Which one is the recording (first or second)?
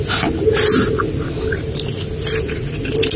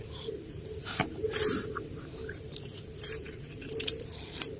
first